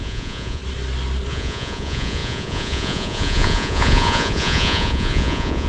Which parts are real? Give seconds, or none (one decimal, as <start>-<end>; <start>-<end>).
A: 0.6-1.3